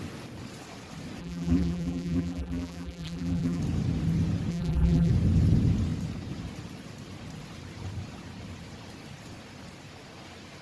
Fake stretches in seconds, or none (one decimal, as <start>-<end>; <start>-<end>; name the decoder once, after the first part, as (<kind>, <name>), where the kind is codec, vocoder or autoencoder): 1.2-3.6 (vocoder, BigVGAN v2); 4.5-5.1

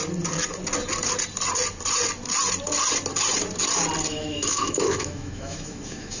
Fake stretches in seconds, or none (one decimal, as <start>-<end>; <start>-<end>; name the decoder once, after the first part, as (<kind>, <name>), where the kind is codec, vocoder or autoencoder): 4.1-6.2 (autoencoder, DAC-VAE)

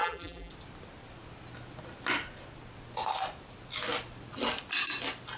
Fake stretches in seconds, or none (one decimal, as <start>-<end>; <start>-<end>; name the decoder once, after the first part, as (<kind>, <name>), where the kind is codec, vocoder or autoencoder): 0.0-0.5 (vocoder, BigVGAN v2)

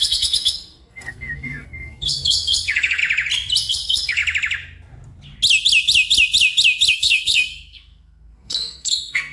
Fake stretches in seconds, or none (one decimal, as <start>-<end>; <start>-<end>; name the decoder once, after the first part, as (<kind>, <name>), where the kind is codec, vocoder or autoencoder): 0.0-3.0 (codec, SNAC); 3.7-4.2; 6.9-9.3

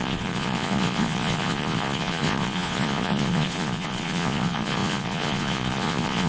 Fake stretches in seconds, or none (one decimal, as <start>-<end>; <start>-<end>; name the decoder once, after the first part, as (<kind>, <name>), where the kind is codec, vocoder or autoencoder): 0.0-6.3 (vocoder, Vocos)

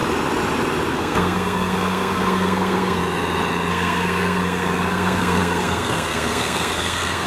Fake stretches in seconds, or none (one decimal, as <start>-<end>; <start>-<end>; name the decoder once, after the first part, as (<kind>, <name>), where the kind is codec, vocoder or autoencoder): 0.9-3.0 (codec, SNAC); 3.7-7.3